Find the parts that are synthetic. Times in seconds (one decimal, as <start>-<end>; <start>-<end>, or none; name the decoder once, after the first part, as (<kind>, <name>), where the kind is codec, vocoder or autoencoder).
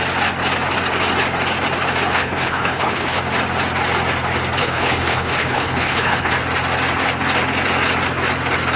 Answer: 2.1-3.2 (codec, HILCodec); 4.6-6.3